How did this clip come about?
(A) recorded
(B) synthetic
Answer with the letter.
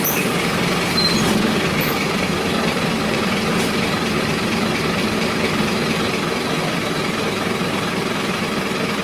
B